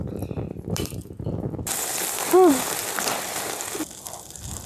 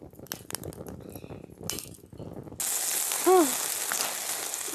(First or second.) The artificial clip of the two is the first